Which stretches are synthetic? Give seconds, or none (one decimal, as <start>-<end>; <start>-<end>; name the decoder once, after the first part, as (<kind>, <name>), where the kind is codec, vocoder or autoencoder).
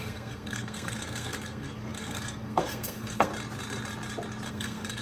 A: 0.0-3.3 (codec, SNAC); 4.5-5.0